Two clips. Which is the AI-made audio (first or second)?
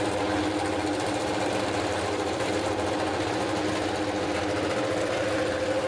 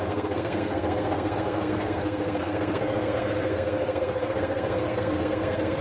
second